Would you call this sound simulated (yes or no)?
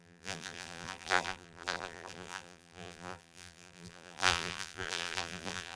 yes